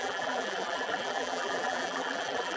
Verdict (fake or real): fake